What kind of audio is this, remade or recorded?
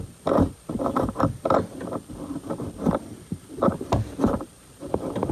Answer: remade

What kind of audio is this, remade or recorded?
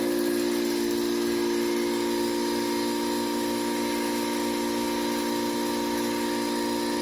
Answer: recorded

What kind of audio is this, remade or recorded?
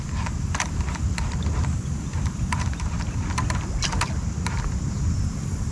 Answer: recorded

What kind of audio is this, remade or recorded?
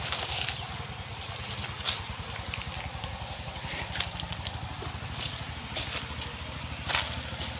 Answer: recorded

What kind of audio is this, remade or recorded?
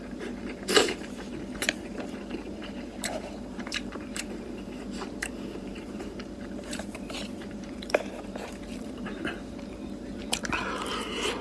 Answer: remade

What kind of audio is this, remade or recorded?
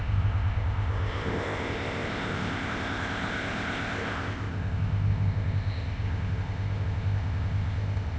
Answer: remade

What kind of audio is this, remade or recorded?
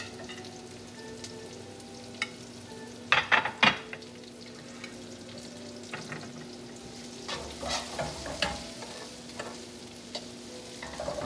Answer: recorded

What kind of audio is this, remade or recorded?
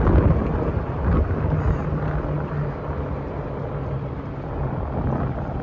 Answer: recorded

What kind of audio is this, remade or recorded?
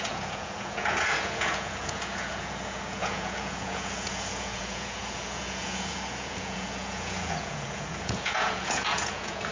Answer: remade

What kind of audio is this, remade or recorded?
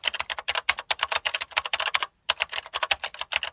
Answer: recorded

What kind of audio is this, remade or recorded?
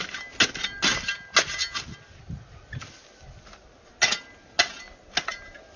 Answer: recorded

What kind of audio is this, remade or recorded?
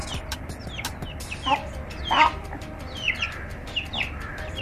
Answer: remade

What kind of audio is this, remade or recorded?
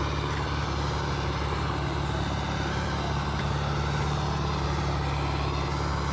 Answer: recorded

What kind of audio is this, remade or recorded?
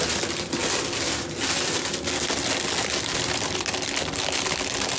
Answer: recorded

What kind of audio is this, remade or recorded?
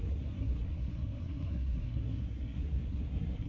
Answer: remade